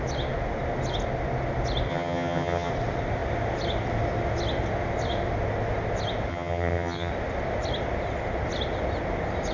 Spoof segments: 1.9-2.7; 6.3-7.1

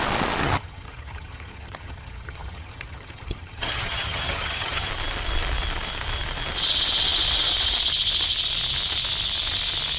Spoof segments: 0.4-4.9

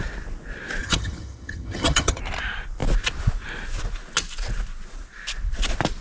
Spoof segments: 0.8-2.2

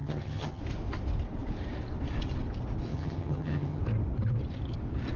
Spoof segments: 0.0-0.6; 2.9-3.8

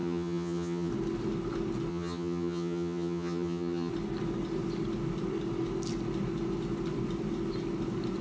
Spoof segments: 0.0-0.9; 1.9-3.9

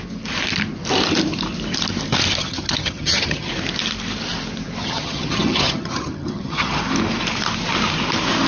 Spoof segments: 2.4-3.5; 4.8-6.8